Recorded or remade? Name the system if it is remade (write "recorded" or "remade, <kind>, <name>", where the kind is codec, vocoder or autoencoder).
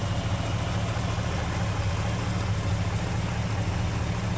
recorded